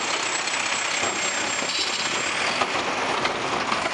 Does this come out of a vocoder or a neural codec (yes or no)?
no